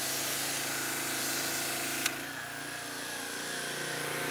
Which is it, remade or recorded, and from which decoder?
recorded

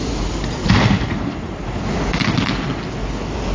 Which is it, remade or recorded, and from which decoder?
recorded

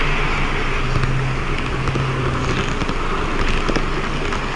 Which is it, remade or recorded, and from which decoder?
recorded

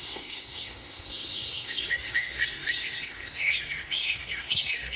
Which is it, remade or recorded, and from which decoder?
remade, codec, SNAC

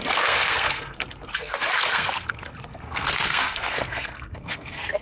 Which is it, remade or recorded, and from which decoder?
remade, codec, SNAC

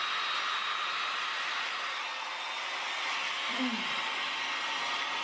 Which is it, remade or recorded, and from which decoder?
recorded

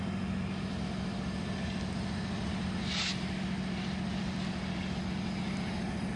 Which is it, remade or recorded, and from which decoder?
recorded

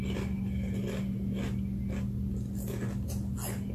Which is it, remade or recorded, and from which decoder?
recorded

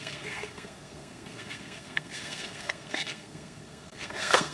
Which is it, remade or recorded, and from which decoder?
remade, codec, SNAC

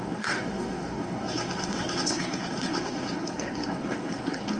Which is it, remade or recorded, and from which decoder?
remade, codec, SNAC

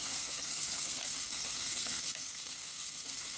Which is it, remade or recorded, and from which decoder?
remade, codec, SNAC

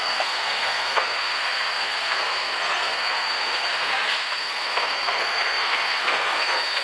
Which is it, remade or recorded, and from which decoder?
remade, codec, SNAC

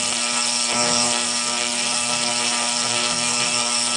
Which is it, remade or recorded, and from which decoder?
remade, codec, SNAC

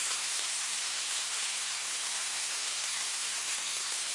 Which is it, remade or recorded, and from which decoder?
remade, codec, SNAC